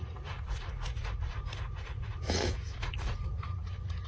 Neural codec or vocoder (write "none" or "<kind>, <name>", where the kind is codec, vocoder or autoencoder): vocoder, Vocos